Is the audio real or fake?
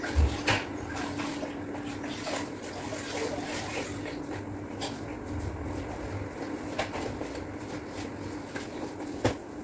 real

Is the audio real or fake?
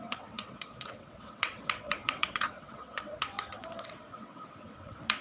fake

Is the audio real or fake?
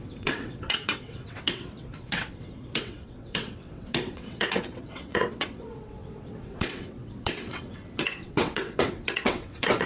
fake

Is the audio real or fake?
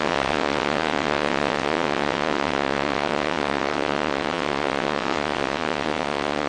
fake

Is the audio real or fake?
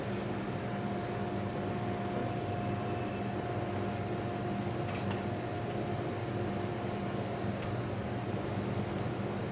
real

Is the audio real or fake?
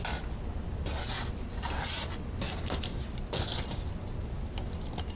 real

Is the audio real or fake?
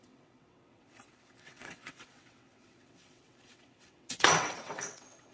fake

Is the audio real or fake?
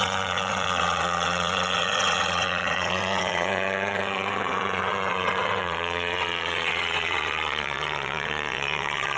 fake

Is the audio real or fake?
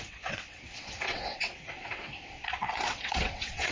fake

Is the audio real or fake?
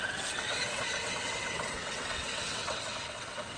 fake